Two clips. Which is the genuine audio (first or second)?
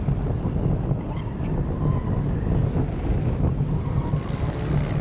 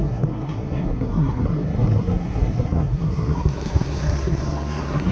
first